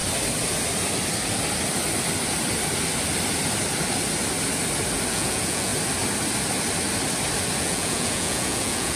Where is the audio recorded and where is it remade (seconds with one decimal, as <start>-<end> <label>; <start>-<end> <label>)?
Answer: 0.0-5.1 recorded; 5.1-5.7 remade; 5.7-7.6 recorded; 7.6-9.0 remade